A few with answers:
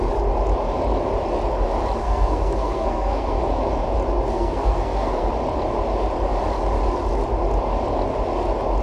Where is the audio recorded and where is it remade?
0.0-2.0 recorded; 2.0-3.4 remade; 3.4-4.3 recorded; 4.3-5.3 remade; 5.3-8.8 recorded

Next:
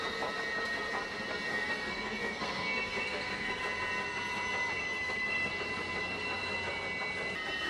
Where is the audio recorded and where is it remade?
0.0-1.5 recorded; 1.5-3.6 remade; 3.6-4.8 recorded; 4.8-5.5 remade; 5.5-7.7 recorded

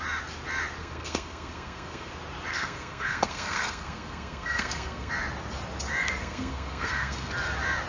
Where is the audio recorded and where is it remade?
0.0-0.8 recorded; 0.8-2.1 remade; 2.1-2.5 recorded; 2.5-5.1 remade; 5.1-6.0 recorded; 6.0-7.3 remade; 7.3-7.9 recorded

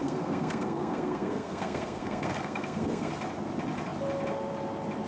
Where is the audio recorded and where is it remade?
0.0-3.1 remade; 3.1-5.1 recorded

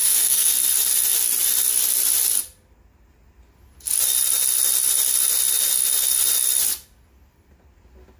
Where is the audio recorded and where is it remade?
0.0-0.5 remade; 0.5-8.2 recorded

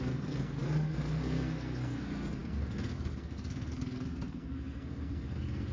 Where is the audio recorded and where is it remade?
0.0-5.7 remade

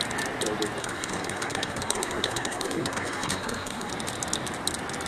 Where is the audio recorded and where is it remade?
0.0-0.8 recorded; 0.8-3.9 remade; 3.9-5.1 recorded